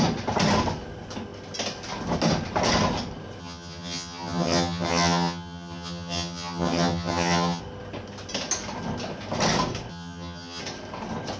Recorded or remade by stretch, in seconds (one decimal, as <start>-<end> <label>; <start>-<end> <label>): 0.0-3.4 recorded; 3.4-7.6 remade; 7.6-9.9 recorded; 9.9-10.6 remade; 10.6-11.4 recorded